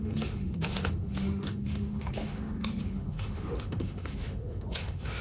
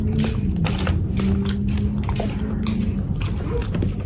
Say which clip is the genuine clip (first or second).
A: second